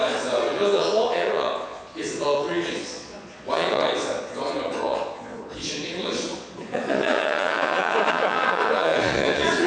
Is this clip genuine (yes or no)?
no